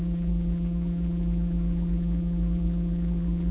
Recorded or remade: remade